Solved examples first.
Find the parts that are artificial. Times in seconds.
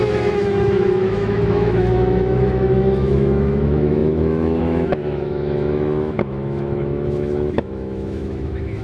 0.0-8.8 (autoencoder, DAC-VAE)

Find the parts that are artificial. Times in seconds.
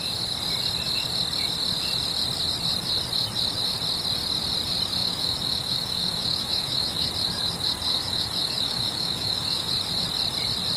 5.0-7.1 (autoencoder, DAC-VAE); 7.9-9.7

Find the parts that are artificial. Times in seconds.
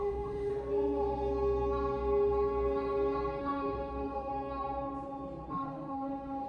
0.0-0.5 (autoencoder, DAC-VAE); 3.4-4.3; 5.5-6.5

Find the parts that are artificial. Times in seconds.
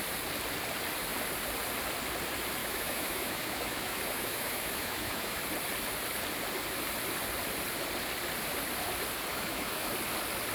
2.6-5.4 (autoencoder, DAC-VAE); 9.3-9.9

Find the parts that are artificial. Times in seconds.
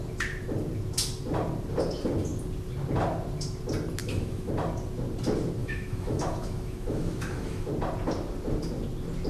4.0-4.5 (autoencoder, DAC-VAE); 5.6-7.7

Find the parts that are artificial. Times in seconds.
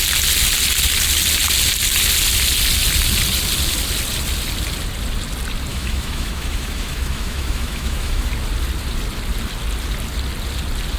5.7-8.3 (autoencoder, DAC-VAE)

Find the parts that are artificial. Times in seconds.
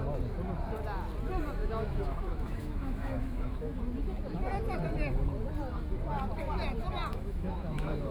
1.6-3.8 (autoencoder, DAC-VAE); 7.1-8.1